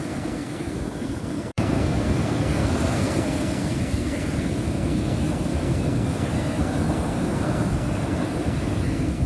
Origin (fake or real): fake